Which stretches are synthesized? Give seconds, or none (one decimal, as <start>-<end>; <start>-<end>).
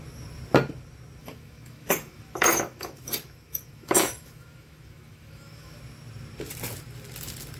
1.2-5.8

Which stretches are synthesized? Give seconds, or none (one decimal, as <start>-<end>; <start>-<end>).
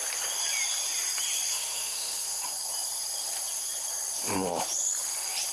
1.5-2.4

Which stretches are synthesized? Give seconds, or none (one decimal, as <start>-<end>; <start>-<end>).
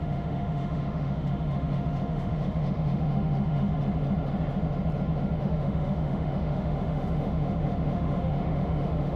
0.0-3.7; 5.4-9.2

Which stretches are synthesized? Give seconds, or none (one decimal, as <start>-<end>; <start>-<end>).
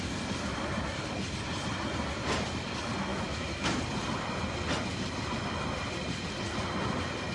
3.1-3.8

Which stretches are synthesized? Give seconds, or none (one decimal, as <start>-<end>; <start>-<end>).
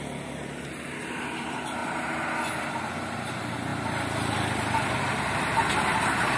none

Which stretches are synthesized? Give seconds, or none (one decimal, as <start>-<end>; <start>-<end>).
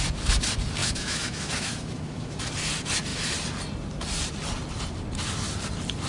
0.8-2.4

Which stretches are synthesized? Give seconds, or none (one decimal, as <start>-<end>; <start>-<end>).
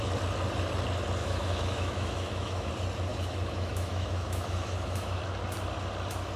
1.2-2.7; 3.1-5.2